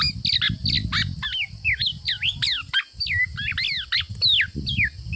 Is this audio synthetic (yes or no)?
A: no